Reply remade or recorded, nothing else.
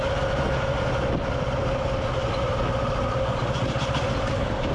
recorded